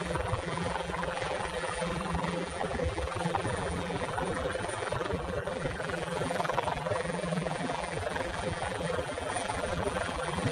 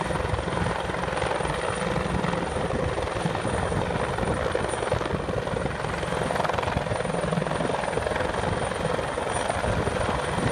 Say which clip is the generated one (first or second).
first